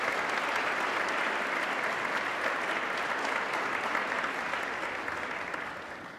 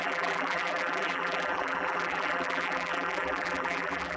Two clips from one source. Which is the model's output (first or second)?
second